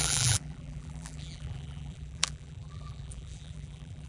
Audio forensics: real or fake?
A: fake